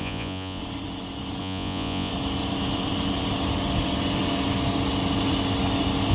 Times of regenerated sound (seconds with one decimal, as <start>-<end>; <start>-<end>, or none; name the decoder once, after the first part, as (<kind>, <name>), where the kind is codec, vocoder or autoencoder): 0.0-0.6 (vocoder, Vocos); 1.4-2.1